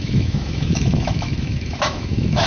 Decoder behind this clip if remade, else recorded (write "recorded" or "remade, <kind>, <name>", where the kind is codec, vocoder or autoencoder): remade, autoencoder, DAC-VAE